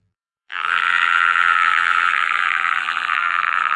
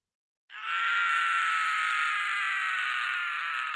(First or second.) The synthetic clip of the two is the first